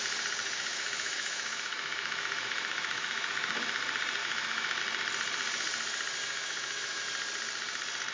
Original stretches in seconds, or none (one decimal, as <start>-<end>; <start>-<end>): 0.0-0.4; 3.6-4.2; 4.8-6.2; 7.0-8.1